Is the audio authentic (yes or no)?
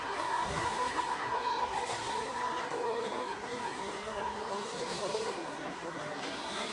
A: no